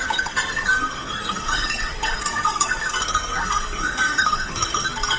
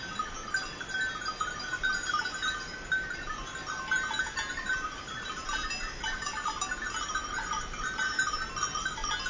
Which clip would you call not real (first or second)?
first